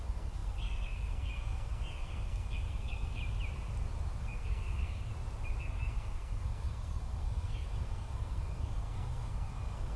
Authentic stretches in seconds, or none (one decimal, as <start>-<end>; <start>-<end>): 3.2-4.2; 5.1-5.6